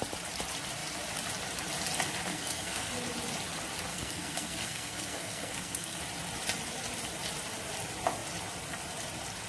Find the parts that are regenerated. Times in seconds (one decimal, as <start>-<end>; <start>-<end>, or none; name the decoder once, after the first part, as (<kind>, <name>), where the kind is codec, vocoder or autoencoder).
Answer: 2.3-2.9 (codec, SNAC); 3.9-6.0